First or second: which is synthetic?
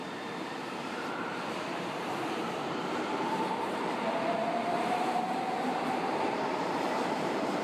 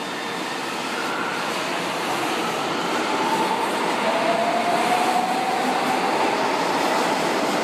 first